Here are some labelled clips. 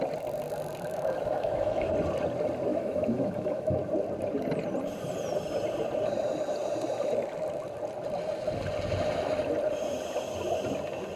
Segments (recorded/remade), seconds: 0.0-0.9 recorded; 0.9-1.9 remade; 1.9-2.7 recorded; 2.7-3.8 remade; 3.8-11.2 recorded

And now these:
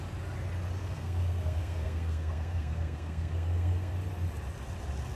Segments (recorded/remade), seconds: 0.0-0.8 recorded; 0.8-3.9 remade; 3.9-5.1 recorded

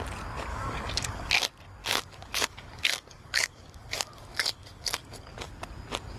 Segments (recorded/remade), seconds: 0.0-0.5 recorded; 0.5-1.3 remade; 1.3-1.8 recorded; 1.8-5.5 remade; 5.5-6.2 recorded

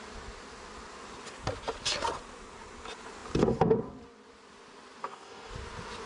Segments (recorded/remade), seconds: 0.0-5.0 recorded; 5.0-5.5 remade; 5.5-6.1 recorded

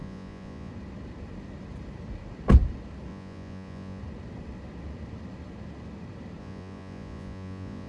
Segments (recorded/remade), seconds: 0.0-0.7 remade; 0.7-3.1 recorded; 3.1-4.0 remade; 4.0-6.4 recorded; 6.4-7.9 remade